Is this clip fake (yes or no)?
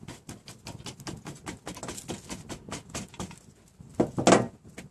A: no